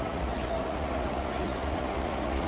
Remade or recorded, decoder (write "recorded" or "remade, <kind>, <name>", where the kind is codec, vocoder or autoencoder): remade, vocoder, Vocos